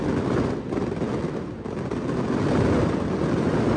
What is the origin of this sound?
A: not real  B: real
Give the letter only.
B